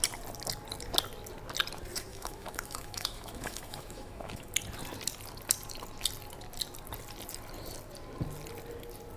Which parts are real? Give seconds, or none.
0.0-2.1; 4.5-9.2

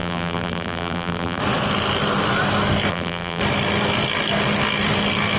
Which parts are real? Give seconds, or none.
1.4-2.9; 3.4-5.4

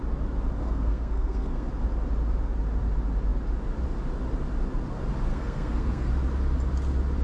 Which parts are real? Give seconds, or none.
0.0-0.6; 1.7-5.3; 6.1-7.2

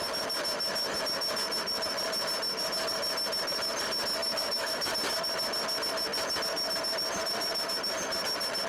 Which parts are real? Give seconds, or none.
0.0-4.2; 4.9-8.7

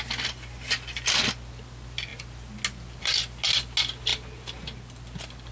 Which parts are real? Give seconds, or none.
0.0-5.5

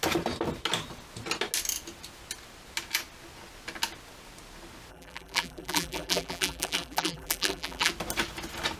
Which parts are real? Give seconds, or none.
0.0-4.9; 7.9-8.8